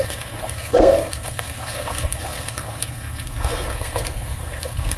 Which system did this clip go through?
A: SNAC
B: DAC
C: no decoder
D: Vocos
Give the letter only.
A